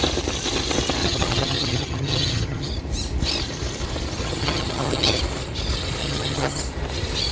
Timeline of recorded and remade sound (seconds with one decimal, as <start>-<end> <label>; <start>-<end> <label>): 0.0-1.0 recorded; 1.0-2.7 remade; 2.7-4.2 recorded; 4.2-5.2 remade; 5.2-6.0 recorded; 6.0-6.6 remade; 6.6-7.3 recorded